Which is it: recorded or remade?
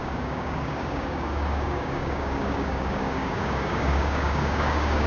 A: remade